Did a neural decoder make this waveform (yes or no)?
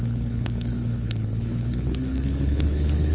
yes